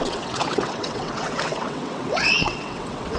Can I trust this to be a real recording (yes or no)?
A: no